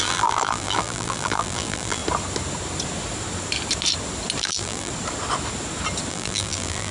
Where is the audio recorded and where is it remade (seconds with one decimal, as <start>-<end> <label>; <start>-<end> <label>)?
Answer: 0.0-2.0 remade; 2.0-4.4 recorded; 4.4-4.9 remade; 4.9-6.1 recorded; 6.1-6.9 remade